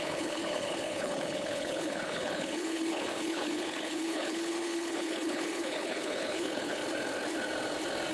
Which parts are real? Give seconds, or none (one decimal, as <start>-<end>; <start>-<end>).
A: 6.8-8.1